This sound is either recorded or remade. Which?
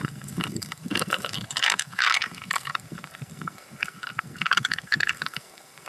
remade